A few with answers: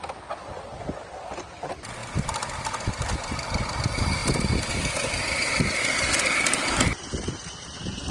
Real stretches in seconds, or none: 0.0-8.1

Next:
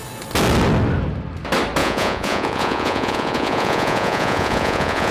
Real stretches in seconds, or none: 0.0-1.8

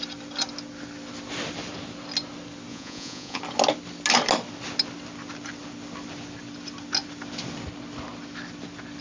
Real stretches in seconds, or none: 0.0-2.7; 3.4-9.0

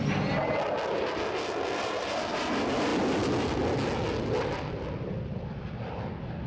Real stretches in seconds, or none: 0.0-6.5

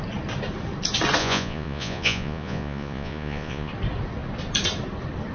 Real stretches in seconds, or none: 0.0-1.2; 3.7-5.3

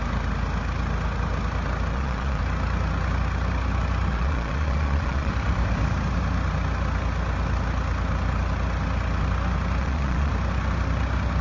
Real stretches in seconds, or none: 0.0-1.9; 2.4-4.1; 5.3-9.8; 10.3-11.4

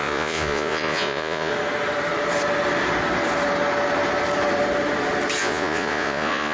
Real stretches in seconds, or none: 1.5-5.4